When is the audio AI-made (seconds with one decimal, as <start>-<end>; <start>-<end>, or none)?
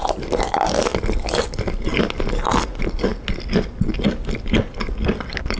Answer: none